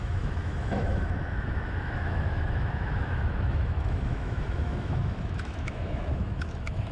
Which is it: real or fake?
fake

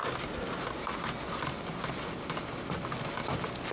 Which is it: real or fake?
real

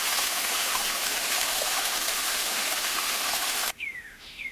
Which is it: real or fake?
fake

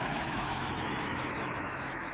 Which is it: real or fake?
fake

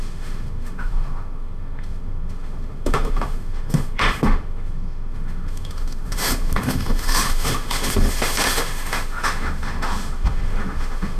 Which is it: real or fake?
fake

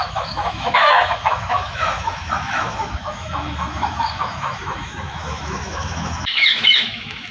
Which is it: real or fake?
fake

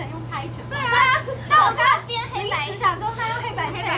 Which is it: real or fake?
real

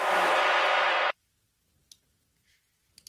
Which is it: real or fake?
real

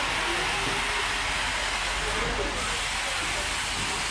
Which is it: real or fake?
real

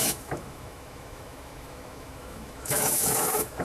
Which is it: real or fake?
fake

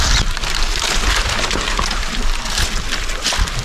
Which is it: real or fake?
real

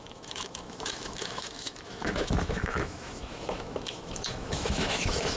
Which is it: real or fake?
fake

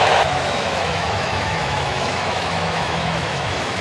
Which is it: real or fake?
fake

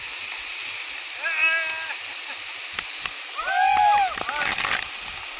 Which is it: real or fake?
real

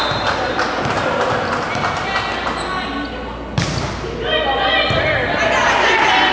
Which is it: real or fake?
real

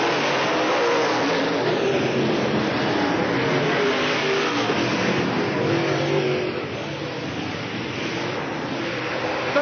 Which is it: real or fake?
real